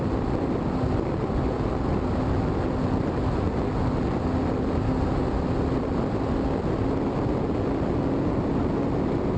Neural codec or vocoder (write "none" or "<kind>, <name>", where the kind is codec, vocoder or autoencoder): none